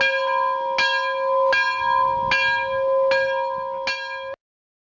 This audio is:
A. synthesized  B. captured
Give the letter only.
B